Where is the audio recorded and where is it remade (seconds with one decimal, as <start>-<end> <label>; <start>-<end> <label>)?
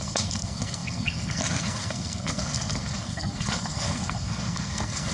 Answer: 0.0-5.1 remade